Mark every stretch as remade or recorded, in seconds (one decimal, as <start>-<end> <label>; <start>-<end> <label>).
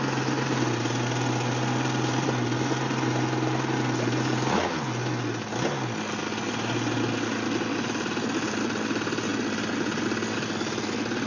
0.0-11.3 recorded